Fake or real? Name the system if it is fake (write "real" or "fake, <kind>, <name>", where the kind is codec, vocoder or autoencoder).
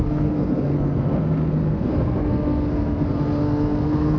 fake, codec, SNAC